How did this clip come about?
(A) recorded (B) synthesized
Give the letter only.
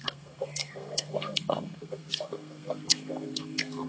B